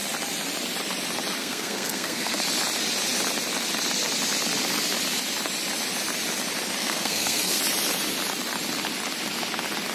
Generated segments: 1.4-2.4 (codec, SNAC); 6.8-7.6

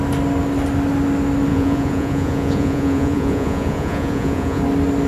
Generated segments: 1.5-4.6 (vocoder, Vocos)